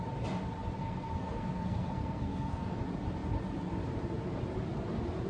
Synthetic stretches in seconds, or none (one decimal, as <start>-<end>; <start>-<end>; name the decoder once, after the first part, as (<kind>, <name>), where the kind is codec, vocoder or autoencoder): 0.8-2.8 (codec, SNAC)

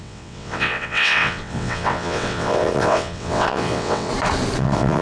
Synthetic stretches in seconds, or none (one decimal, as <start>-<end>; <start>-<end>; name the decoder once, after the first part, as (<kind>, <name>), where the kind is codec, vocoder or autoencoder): 0.0-4.1 (vocoder, WaveNeXt); 4.6-5.0

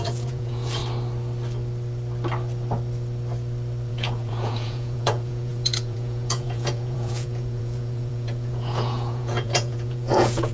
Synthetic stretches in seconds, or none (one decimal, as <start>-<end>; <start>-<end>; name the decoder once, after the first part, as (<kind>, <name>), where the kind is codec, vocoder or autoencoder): 0.0-0.8 (vocoder, Vocos); 3.9-10.5

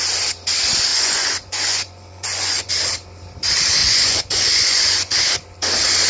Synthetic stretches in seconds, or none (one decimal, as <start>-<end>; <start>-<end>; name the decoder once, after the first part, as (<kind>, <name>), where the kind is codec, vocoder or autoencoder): 0.9-2.7 (vocoder, Vocos); 3.8-5.2

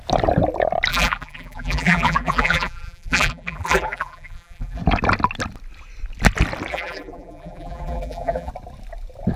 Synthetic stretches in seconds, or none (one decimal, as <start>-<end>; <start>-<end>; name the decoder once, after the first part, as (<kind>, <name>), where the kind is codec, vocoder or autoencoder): 0.9-4.8 (vocoder, BigVGAN v2); 6.7-8.5

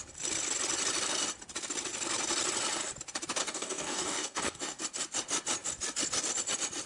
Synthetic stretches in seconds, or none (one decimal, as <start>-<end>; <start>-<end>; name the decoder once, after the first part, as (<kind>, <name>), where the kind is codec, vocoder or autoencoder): 3.4-4.8 (codec, DAC)